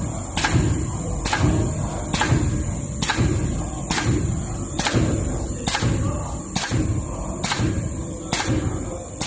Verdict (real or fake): real